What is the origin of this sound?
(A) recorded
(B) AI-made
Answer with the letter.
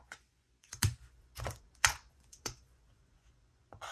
B